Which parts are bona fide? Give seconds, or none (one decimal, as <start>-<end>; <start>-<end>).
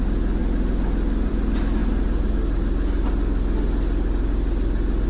0.0-5.1